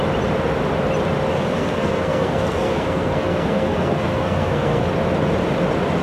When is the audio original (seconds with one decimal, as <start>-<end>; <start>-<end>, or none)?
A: 0.0-1.3; 4.9-6.0